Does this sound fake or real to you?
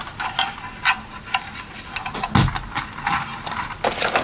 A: real